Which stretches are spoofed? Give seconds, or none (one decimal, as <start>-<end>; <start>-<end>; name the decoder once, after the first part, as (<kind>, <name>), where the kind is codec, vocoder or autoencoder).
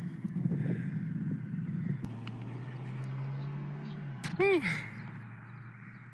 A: 0.0-0.5 (codec, SNAC); 3.0-4.3